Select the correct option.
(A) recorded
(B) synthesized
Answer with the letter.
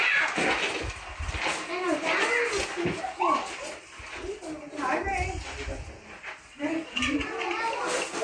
A